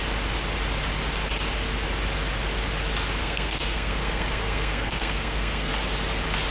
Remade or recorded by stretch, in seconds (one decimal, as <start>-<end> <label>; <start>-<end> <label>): 0.0-3.2 recorded; 3.2-5.7 remade; 5.7-6.5 recorded